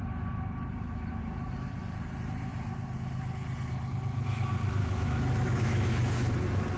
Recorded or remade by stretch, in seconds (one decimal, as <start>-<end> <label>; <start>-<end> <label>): 0.0-4.8 recorded; 4.8-6.3 remade; 6.3-6.8 recorded